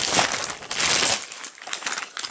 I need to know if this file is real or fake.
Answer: real